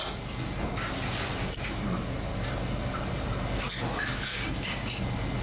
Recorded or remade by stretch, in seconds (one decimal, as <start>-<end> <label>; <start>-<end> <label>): 0.0-4.3 recorded; 4.3-5.0 remade; 5.0-5.4 recorded